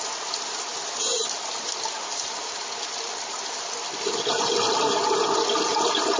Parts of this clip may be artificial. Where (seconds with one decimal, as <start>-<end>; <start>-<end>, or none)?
none